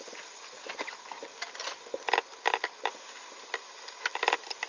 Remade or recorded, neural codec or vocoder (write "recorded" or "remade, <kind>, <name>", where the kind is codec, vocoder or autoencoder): recorded